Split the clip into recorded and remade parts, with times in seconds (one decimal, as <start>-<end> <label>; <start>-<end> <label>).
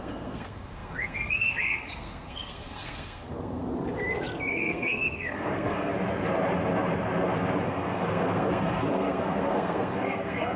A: 0.0-3.6 remade; 3.6-4.5 recorded; 4.5-5.9 remade; 5.9-7.6 recorded; 7.6-10.6 remade